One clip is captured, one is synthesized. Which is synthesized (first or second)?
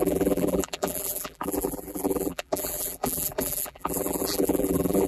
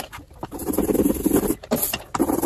first